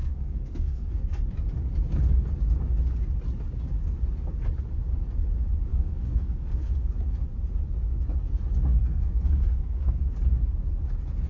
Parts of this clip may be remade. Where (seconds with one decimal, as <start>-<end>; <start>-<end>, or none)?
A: 0.0-1.2; 5.7-6.7; 8.7-10.0

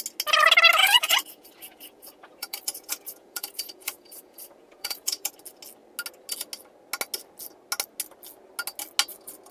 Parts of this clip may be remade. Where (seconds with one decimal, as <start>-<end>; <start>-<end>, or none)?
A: 0.8-5.3

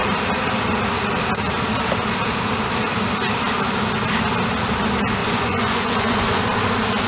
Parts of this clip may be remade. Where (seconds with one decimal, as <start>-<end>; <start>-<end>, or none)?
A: 5.2-6.4

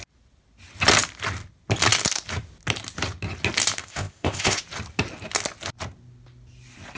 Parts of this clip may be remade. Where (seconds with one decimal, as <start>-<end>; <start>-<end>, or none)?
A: 3.8-4.6

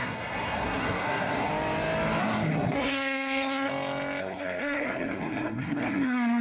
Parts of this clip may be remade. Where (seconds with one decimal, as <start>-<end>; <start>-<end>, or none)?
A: 0.0-1.5; 2.2-3.7; 4.2-6.4